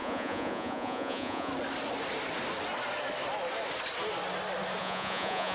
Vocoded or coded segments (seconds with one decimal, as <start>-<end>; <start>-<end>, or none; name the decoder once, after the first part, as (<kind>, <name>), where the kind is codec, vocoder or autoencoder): 0.0-1.5 (vocoder, Vocos); 4.8-5.5